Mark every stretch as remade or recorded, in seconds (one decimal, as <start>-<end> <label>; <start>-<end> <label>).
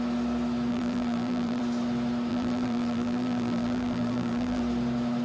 0.0-0.7 recorded; 0.7-1.6 remade; 1.6-2.3 recorded; 2.3-4.6 remade; 4.6-5.2 recorded